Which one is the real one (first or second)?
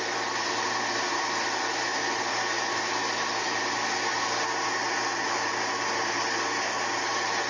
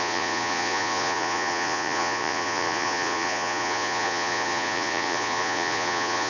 first